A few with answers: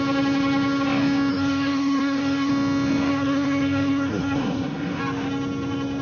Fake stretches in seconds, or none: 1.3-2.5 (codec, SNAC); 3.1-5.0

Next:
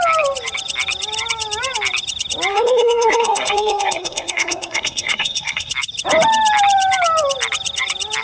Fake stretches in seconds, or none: 2.5-5.7 (codec, SNAC)

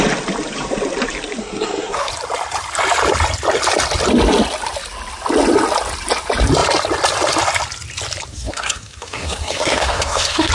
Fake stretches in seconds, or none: 1.4-2.1 (codec, SNAC); 8.3-10.5

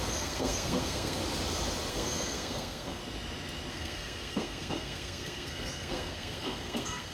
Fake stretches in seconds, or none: 0.0-1.2 (codec, SNAC); 1.9-3.0; 3.7-7.1

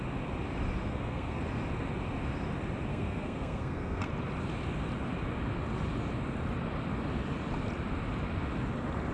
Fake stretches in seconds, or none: 0.8-1.4 (codec, SNAC); 2.9-4.1